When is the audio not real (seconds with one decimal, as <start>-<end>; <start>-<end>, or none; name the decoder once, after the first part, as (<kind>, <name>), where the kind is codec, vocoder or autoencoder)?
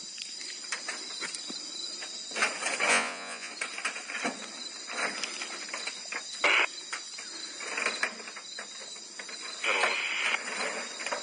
2.9-3.5 (vocoder, Vocos)